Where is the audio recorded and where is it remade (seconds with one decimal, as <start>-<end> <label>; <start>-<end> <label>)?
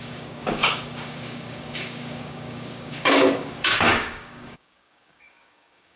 0.0-6.0 remade